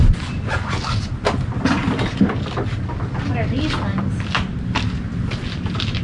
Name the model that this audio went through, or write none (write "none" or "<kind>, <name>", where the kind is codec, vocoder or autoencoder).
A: none